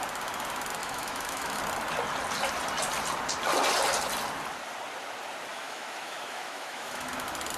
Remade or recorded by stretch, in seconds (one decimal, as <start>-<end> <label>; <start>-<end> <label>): 0.0-0.8 recorded; 0.8-1.6 remade; 1.6-5.5 recorded; 5.5-7.1 remade; 7.1-7.6 recorded